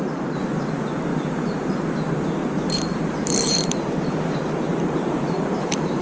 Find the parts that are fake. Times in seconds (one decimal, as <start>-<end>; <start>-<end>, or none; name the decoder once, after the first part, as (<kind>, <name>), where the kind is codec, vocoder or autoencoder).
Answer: 1.1-1.7 (vocoder, BigVGAN v2); 2.4-6.0